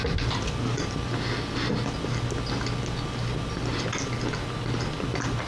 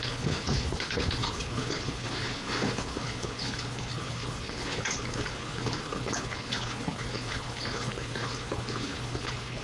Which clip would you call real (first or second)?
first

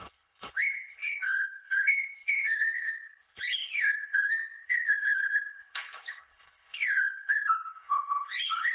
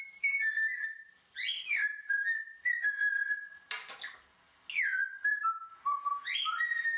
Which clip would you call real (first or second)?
second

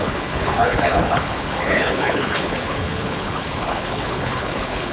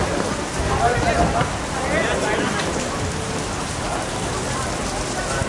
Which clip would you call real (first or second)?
second